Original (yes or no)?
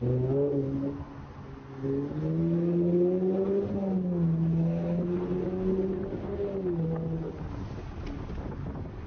yes